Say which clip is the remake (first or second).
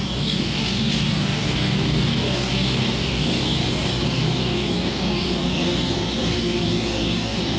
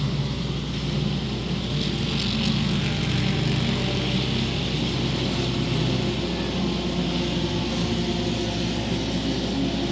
first